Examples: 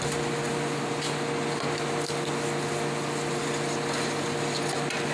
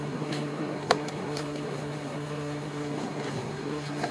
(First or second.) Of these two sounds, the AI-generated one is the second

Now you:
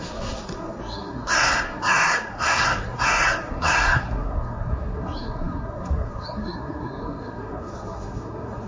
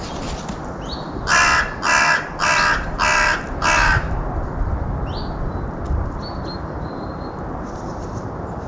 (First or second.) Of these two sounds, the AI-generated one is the first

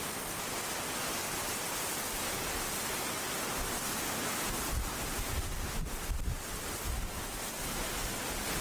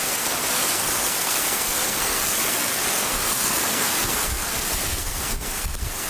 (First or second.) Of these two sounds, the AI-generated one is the second